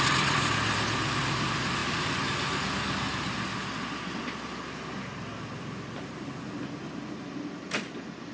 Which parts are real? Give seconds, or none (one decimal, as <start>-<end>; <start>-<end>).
0.0-8.3

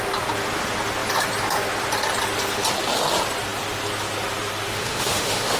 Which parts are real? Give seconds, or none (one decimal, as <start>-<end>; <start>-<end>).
0.0-4.7

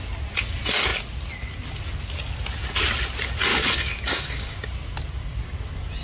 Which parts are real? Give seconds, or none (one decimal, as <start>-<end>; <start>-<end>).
0.0-3.5; 4.6-6.0

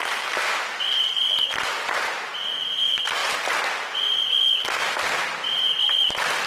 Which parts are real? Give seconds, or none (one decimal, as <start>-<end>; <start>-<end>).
0.0-6.5